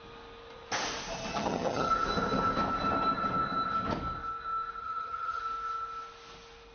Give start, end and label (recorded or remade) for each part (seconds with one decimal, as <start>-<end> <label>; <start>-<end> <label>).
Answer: 0.0-1.3 recorded; 1.3-1.9 remade; 1.9-4.8 recorded; 4.8-5.4 remade; 5.4-6.7 recorded